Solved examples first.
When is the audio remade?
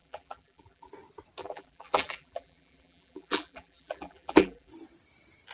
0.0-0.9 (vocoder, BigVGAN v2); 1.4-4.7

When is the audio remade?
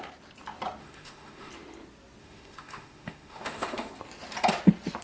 0.8-1.5 (autoencoder, DAC-VAE); 2.2-3.9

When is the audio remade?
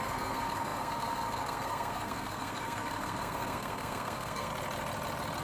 0.0-4.5 (codec, SNAC)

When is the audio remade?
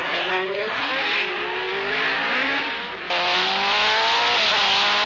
0.0-0.9 (codec, SNAC)